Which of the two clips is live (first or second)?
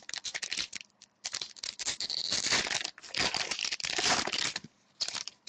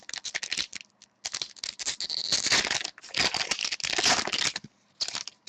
second